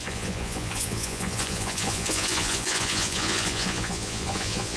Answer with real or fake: fake